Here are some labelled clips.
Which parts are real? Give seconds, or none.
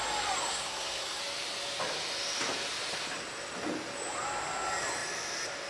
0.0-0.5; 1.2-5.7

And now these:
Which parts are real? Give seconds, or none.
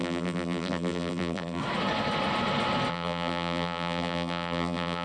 1.6-2.9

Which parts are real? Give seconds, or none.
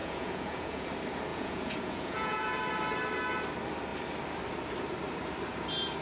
0.9-1.3; 2.6-6.0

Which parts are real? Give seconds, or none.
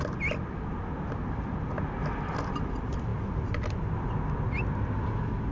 0.0-5.5